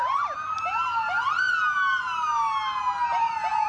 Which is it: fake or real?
real